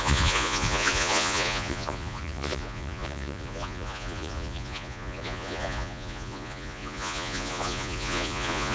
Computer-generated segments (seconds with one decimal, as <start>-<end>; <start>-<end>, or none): 0.0-8.7

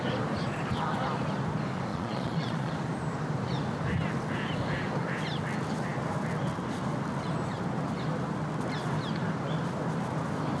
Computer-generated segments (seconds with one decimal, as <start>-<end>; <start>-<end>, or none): 1.9-2.7